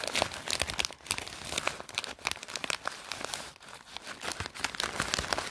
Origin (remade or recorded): recorded